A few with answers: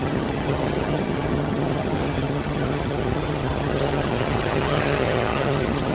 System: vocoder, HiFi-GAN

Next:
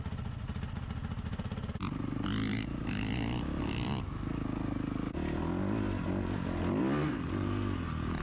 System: none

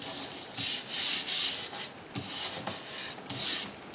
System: none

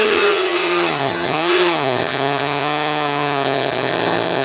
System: vocoder, HiFi-GAN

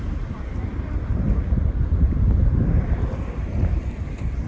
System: none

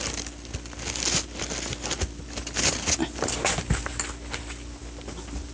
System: none